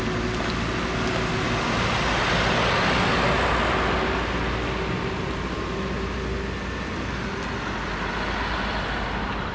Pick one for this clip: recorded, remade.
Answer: recorded